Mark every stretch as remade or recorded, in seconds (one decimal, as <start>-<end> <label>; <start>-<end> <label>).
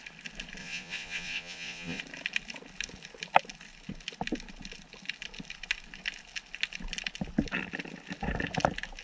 0.0-0.6 recorded; 0.6-2.0 remade; 2.0-9.0 recorded